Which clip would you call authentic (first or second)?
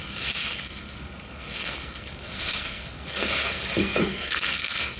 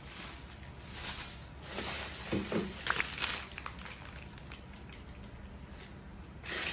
second